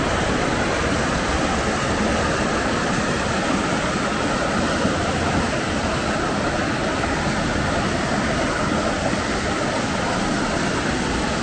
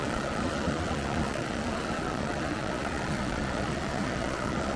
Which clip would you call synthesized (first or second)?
second